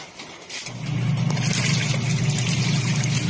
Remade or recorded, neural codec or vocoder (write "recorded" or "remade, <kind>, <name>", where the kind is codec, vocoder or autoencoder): recorded